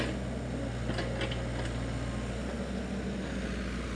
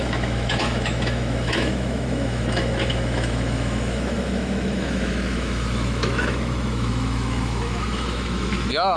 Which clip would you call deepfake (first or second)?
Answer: second